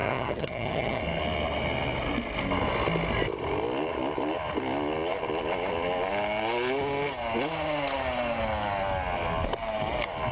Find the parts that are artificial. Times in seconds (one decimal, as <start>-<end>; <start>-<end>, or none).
0.0-1.0